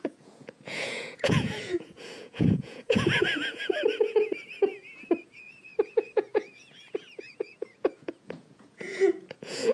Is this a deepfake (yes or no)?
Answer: yes